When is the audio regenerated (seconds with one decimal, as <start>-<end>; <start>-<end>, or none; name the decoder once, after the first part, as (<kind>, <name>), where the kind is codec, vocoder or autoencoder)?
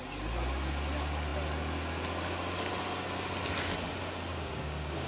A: 4.3-5.1 (codec, DAC)